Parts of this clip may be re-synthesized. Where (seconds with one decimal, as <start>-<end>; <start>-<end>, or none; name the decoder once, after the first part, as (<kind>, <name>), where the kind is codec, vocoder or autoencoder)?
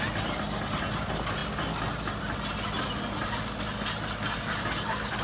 none